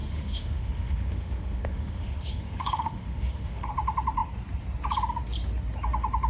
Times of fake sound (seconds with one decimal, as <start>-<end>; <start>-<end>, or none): 0.0-3.7